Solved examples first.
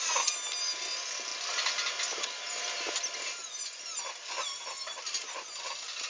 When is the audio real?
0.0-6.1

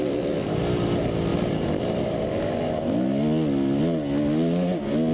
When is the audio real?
0.0-5.1

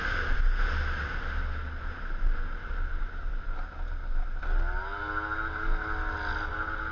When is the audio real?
0.0-6.9

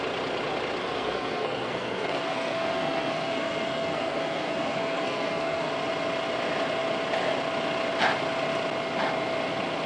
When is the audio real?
0.0-0.8; 5.7-9.9

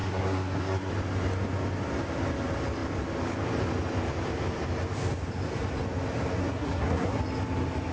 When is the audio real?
0.9-6.4; 7.2-7.9